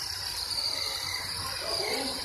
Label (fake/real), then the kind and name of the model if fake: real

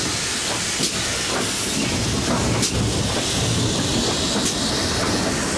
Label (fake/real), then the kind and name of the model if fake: real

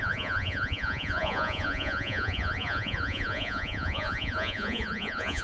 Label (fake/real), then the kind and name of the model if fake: fake, vocoder, Vocos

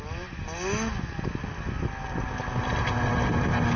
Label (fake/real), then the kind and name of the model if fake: real